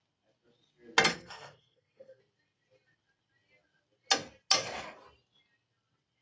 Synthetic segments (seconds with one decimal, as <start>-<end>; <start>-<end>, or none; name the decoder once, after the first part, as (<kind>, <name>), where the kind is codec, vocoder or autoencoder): 1.1-2.2 (codec, SNAC)

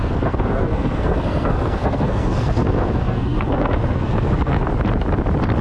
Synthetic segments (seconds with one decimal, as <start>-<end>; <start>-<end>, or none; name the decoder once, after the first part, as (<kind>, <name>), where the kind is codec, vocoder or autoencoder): 0.0-4.7 (codec, SNAC)

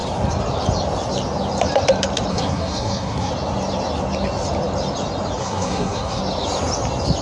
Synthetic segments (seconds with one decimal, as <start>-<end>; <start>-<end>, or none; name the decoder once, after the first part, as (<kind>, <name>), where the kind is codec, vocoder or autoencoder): 2.3-3.3 (codec, SNAC); 5.4-6.2